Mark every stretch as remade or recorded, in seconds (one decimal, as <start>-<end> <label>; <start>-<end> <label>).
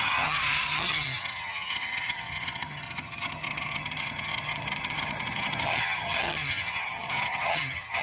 0.0-8.0 remade